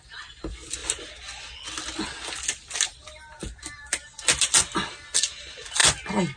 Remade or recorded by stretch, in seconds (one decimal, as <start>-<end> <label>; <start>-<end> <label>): 0.0-6.4 recorded